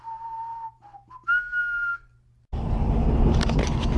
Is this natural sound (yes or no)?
yes